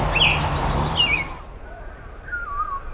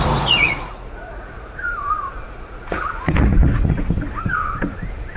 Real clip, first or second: first